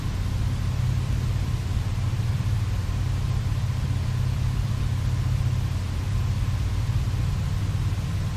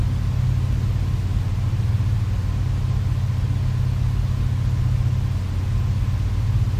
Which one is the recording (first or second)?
second